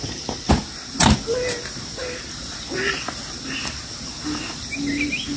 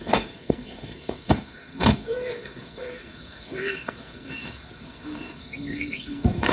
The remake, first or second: second